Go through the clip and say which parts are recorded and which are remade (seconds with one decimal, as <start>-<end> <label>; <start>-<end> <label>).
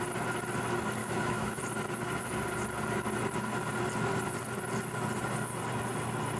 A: 0.0-1.0 recorded; 1.0-1.6 remade; 1.6-6.4 recorded